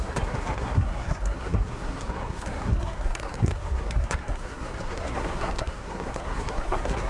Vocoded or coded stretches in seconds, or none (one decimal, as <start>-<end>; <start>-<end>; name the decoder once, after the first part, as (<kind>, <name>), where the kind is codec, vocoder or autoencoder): 0.0-7.1 (codec, SNAC)